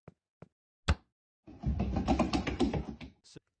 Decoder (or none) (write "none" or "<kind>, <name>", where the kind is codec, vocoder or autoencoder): none